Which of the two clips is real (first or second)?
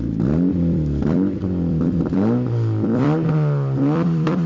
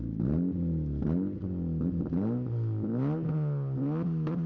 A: second